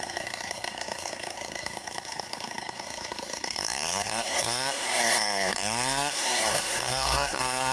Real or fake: fake